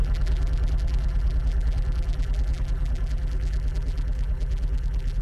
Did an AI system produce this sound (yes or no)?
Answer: yes